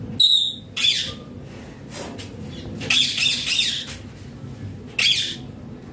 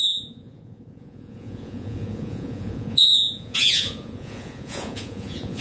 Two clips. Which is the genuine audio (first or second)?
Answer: first